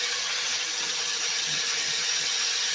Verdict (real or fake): fake